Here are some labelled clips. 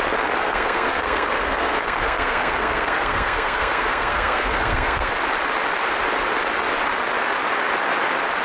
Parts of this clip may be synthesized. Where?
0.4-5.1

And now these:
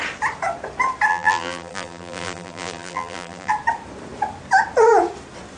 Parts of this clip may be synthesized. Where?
1.1-3.5

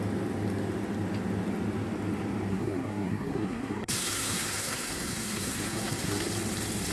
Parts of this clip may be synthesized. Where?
2.5-6.3

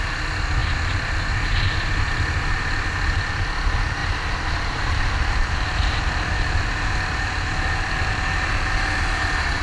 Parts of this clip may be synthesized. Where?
4.0-8.7

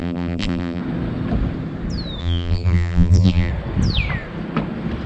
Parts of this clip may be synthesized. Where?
0.0-0.8; 2.2-3.5

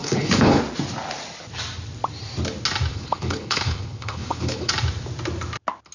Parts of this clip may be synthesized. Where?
0.0-0.6; 2.9-4.7

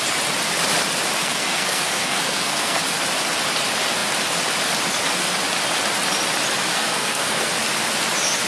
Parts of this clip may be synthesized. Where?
1.2-2.8; 6.7-7.5